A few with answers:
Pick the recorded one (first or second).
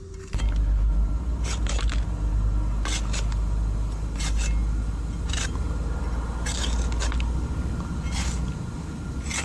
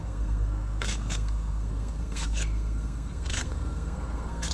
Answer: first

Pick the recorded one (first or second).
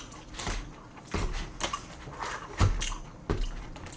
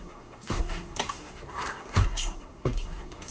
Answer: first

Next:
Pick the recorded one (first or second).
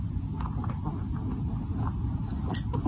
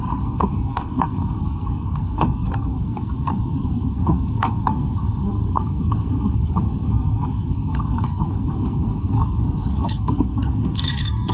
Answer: first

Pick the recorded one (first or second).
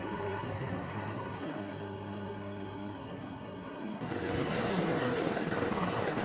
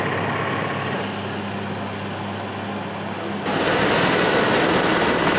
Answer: second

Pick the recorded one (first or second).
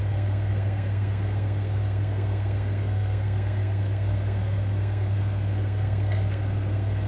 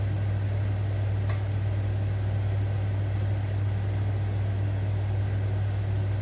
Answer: second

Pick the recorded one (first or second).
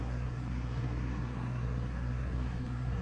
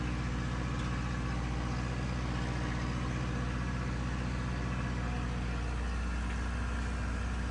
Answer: second